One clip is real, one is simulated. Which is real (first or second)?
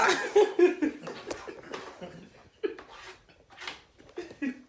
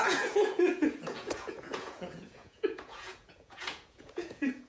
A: first